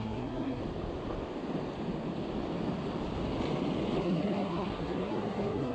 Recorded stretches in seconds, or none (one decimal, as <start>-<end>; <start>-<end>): 0.6-4.0